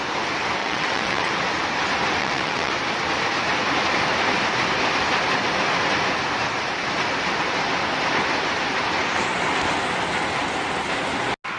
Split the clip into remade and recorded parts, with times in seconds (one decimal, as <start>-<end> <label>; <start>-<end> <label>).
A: 0.0-0.6 recorded; 0.6-1.3 remade; 1.3-2.2 recorded; 2.2-2.7 remade; 2.7-11.6 recorded